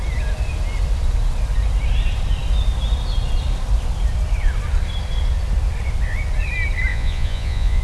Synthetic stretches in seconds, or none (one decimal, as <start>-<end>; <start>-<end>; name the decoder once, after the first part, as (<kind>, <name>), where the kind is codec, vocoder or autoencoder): 6.9-7.8 (vocoder, Vocos)